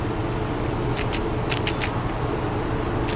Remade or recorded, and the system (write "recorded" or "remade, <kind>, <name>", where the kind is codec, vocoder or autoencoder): recorded